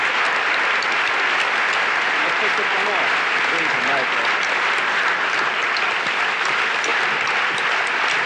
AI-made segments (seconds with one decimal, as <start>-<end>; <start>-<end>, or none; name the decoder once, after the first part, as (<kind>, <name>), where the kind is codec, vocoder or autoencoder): none